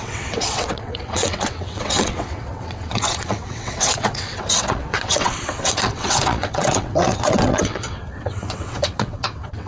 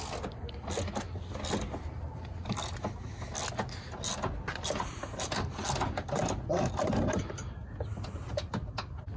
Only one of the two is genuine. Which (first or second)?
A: second